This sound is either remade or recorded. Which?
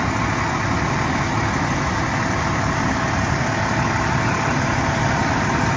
recorded